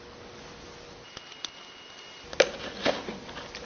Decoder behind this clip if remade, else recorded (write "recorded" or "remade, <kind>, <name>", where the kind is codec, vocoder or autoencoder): recorded